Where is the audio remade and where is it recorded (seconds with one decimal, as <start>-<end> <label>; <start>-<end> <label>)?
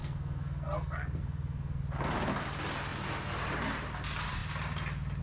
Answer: 0.0-1.8 remade; 1.8-5.2 recorded